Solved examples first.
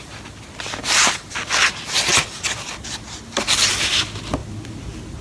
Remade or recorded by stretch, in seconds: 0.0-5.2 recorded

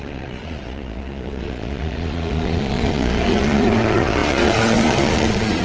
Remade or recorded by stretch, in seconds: 0.0-5.6 remade

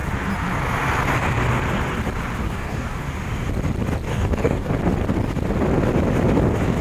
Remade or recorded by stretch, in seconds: 0.0-2.4 recorded; 2.4-3.0 remade; 3.0-4.1 recorded; 4.1-4.7 remade; 4.7-6.8 recorded

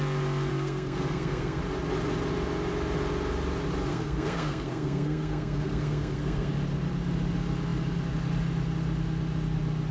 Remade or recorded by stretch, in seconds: 0.0-0.5 recorded; 0.5-1.6 remade; 1.6-3.9 recorded; 3.9-6.5 remade; 6.5-9.9 recorded

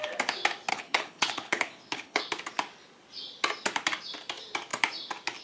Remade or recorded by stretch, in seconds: 0.0-0.7 recorded; 0.7-2.2 remade; 2.2-5.4 recorded

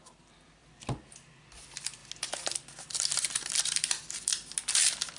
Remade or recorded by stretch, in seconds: 0.0-2.0 remade; 2.0-2.8 recorded; 2.8-4.3 remade; 4.3-5.2 recorded

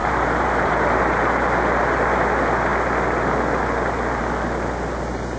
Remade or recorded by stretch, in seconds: 0.0-1.0 remade; 1.0-5.4 recorded

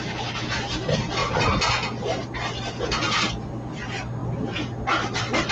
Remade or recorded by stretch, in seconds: 0.0-5.5 recorded